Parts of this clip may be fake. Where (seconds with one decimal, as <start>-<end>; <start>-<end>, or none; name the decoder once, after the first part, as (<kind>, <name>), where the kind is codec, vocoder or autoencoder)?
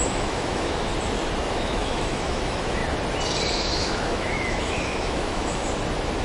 0.0-0.9 (autoencoder, DAC-VAE); 1.5-2.8; 3.5-5.6